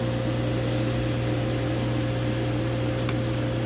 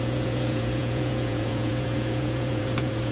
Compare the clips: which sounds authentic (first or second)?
first